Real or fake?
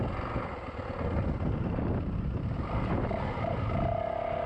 real